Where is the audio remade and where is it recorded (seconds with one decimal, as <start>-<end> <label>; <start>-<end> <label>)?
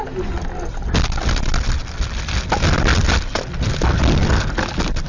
0.0-5.1 recorded